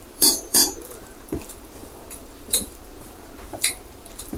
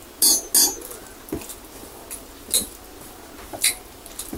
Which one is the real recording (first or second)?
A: second